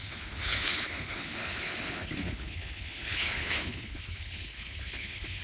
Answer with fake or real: fake